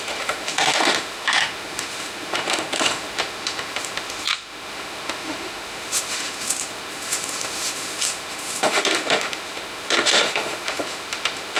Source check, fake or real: fake